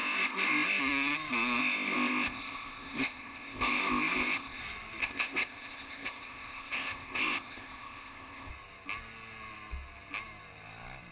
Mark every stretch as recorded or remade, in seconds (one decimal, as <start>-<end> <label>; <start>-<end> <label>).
0.0-0.8 remade; 0.8-1.6 recorded; 1.6-4.6 remade; 4.6-5.0 recorded; 5.0-8.5 remade; 8.5-11.1 recorded